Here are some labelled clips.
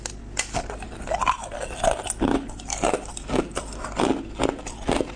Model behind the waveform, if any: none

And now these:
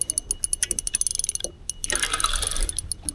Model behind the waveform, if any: none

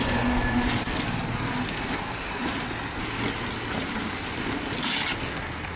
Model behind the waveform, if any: none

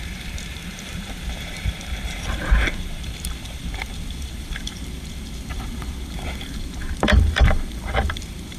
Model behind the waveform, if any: vocoder, BigVGAN v2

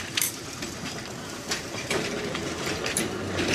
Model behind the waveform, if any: vocoder, BigVGAN v2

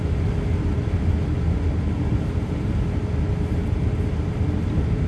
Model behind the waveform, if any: none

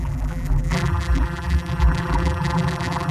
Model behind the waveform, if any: vocoder, BigVGAN v2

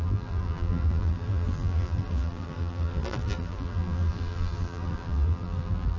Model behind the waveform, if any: vocoder, BigVGAN v2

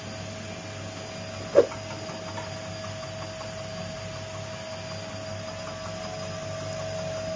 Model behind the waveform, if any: none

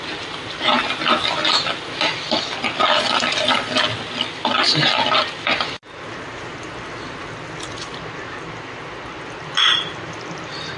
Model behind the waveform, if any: none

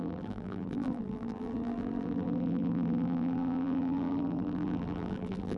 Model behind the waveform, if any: vocoder, BigVGAN v2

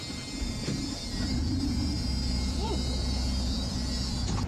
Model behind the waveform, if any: vocoder, BigVGAN v2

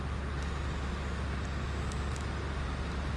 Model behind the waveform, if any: none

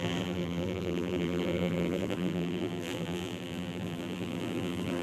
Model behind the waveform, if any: vocoder, BigVGAN v2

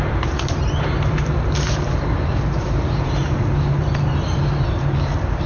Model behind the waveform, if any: vocoder, BigVGAN v2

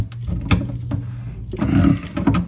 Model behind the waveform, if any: none